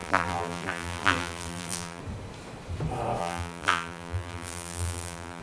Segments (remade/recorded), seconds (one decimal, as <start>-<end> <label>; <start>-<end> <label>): 0.0-2.0 remade; 2.0-3.2 recorded; 3.2-5.4 remade